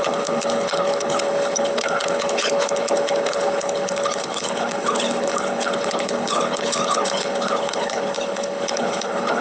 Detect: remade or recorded remade